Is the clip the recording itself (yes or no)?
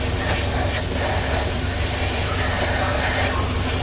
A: yes